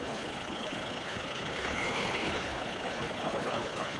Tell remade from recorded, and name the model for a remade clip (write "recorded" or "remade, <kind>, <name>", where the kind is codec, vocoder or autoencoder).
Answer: remade, codec, HILCodec